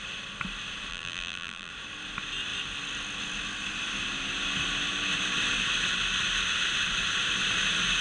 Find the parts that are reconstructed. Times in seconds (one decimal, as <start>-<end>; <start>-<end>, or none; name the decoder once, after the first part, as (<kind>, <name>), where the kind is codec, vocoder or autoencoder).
0.9-1.7 (vocoder, BigVGAN v2)

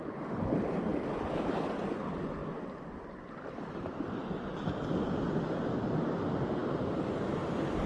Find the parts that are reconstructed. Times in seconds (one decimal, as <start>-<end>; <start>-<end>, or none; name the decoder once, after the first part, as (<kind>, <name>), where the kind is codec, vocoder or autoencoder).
0.9-1.4 (vocoder, BigVGAN v2); 2.4-5.7

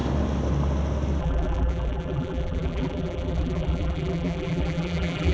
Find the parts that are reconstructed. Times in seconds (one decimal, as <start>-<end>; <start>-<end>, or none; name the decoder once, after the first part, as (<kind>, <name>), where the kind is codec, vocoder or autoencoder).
1.2-5.3 (vocoder, BigVGAN v2)